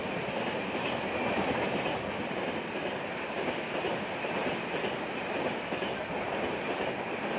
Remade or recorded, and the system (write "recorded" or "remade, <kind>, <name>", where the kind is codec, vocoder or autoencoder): recorded